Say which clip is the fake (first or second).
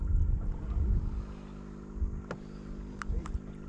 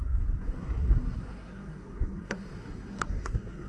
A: second